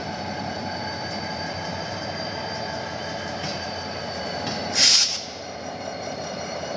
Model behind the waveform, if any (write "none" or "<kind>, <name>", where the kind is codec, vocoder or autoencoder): vocoder, BigVGAN v2